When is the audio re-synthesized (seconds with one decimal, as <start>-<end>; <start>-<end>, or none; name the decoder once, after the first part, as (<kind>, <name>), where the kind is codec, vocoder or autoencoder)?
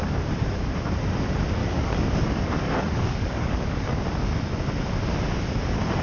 1.6-4.0 (codec, DAC)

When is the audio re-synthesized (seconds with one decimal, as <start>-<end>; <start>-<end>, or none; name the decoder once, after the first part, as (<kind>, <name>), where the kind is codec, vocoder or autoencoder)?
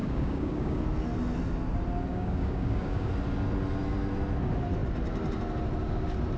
0.0-0.8 (codec, DAC); 2.1-3.1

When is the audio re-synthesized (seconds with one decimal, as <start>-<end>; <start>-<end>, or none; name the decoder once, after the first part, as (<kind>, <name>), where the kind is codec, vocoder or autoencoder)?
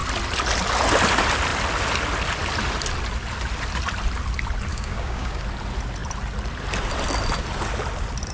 4.7-5.4 (codec, DAC)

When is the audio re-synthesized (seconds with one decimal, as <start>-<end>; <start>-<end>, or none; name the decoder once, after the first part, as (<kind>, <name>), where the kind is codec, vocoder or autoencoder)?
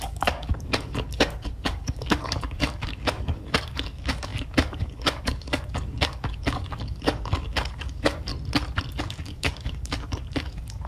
0.0-8.3 (codec, DAC); 9.0-10.9